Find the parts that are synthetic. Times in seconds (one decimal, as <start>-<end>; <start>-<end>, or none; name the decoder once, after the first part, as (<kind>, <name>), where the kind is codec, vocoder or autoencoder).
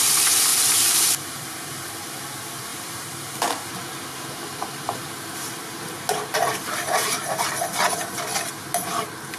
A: 0.5-1.9 (vocoder, BigVGAN v2); 2.7-7.6